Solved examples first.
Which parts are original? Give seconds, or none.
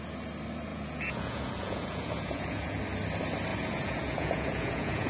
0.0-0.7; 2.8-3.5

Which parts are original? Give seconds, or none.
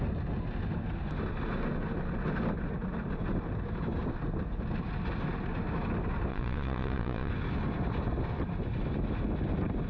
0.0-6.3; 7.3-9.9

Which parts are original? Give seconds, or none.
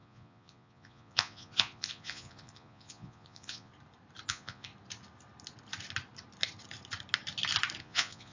3.7-4.3; 4.7-7.8